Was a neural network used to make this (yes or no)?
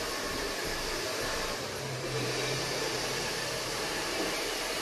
yes